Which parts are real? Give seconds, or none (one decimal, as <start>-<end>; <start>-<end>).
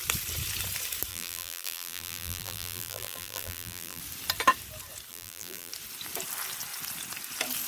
0.0-1.1; 4.0-5.1; 5.7-7.7